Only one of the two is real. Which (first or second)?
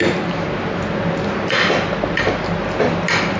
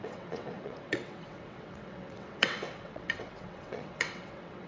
first